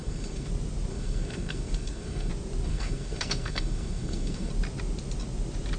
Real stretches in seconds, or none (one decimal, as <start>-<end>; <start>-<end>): 0.5-0.9; 2.3-2.7; 4.5-5.8